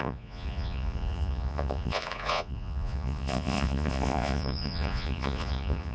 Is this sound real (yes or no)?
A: no